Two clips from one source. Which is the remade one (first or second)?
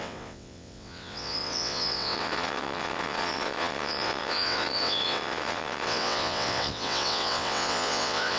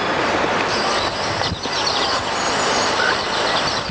first